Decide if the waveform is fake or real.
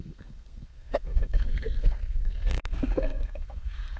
fake